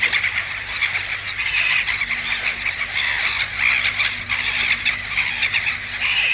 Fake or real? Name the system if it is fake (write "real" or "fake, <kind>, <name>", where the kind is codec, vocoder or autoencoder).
real